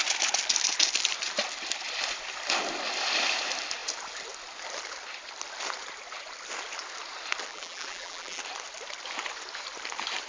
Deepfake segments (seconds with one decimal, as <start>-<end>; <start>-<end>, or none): 7.5-8.4